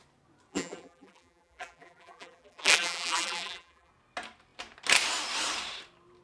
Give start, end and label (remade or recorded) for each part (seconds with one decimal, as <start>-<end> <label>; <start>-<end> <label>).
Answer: 0.0-0.5 recorded; 0.5-3.9 remade; 3.9-6.2 recorded

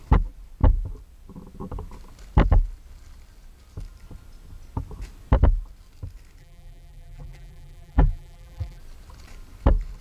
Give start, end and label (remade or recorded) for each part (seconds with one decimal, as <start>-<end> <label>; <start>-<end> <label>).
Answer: 0.0-6.4 recorded; 6.4-8.8 remade; 8.8-10.0 recorded

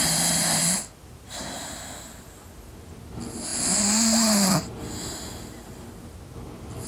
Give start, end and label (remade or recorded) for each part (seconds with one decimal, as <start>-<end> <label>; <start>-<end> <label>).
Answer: 0.0-6.9 recorded

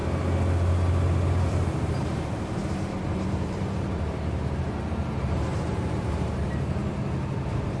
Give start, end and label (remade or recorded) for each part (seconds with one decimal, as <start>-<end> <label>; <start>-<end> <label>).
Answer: 0.0-1.4 recorded; 1.4-6.8 remade; 6.8-7.8 recorded

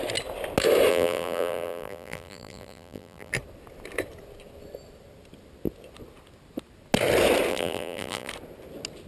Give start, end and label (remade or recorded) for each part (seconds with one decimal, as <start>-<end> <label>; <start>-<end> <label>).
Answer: 0.0-0.9 recorded; 0.9-3.3 remade; 3.3-7.5 recorded; 7.5-8.3 remade; 8.3-9.1 recorded